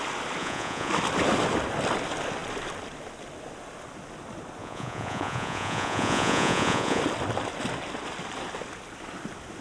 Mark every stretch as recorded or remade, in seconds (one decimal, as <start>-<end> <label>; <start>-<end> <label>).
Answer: 0.0-0.4 recorded; 0.4-0.9 remade; 0.9-4.6 recorded; 4.6-7.0 remade; 7.0-9.6 recorded